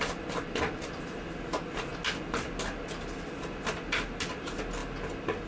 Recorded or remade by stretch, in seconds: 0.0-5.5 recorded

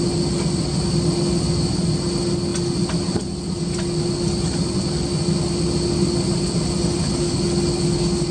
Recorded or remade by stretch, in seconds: 0.0-8.3 recorded

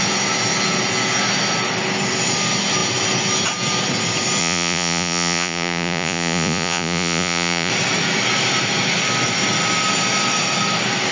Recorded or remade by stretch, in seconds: 0.0-4.4 recorded; 4.4-7.7 remade; 7.7-11.1 recorded

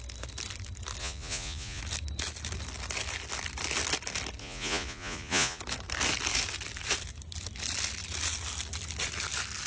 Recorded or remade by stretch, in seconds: 0.0-1.0 recorded; 1.0-1.8 remade; 1.8-4.4 recorded; 4.4-5.6 remade; 5.6-9.7 recorded